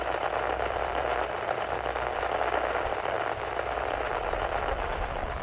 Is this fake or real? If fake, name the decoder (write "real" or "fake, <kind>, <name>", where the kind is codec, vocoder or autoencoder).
fake, vocoder, BigVGAN v2